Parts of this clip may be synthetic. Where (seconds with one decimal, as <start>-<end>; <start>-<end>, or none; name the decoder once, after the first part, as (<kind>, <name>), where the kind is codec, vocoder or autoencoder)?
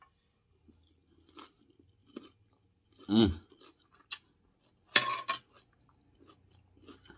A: none